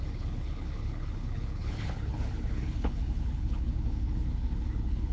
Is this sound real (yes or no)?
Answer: no